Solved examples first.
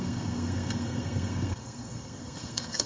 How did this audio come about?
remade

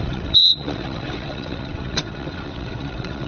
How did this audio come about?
remade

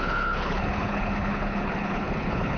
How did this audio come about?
remade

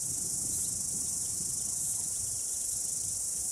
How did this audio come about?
remade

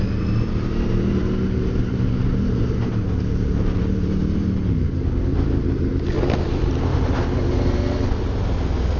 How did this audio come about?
recorded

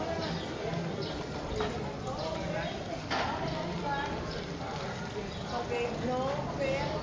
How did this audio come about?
recorded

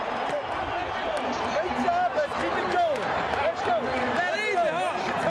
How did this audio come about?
recorded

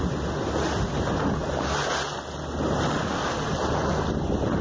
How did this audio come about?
recorded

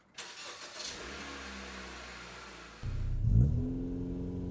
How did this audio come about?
recorded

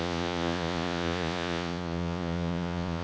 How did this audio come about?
remade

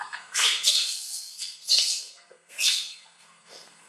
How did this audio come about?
remade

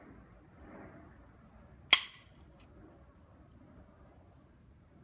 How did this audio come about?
recorded